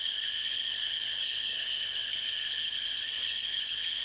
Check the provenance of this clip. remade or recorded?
remade